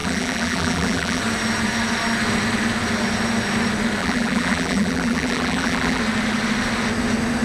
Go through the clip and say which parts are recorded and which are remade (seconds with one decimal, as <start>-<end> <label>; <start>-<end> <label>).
0.0-1.2 remade; 1.2-4.0 recorded; 4.0-6.0 remade; 6.0-7.4 recorded